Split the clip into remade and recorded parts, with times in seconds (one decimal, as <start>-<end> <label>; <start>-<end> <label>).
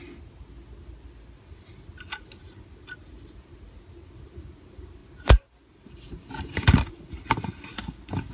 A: 0.0-8.3 recorded